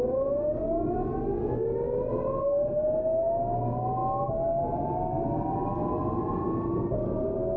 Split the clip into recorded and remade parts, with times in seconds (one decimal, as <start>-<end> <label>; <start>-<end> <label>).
0.0-7.6 recorded